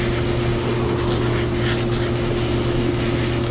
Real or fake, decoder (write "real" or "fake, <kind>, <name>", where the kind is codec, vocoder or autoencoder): real